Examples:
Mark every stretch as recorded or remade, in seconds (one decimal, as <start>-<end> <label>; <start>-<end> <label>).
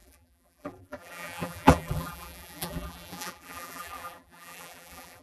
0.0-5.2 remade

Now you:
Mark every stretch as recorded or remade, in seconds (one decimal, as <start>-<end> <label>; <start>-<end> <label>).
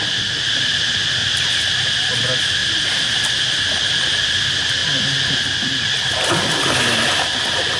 0.0-1.2 recorded; 1.2-2.1 remade; 2.1-7.8 recorded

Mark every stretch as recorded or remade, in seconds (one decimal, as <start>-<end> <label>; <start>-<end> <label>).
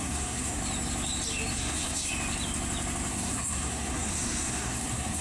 0.0-0.6 remade; 0.6-1.5 recorded; 1.5-2.1 remade; 2.1-3.1 recorded; 3.1-5.2 remade